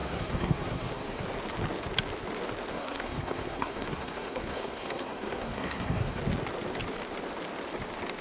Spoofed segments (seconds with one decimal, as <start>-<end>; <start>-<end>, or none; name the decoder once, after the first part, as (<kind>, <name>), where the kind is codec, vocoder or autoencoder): 0.0-1.2 (codec, SNAC); 2.7-6.2